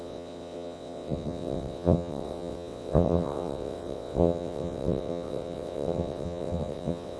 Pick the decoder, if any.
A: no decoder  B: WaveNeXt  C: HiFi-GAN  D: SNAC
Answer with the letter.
B